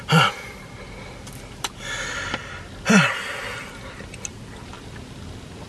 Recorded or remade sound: recorded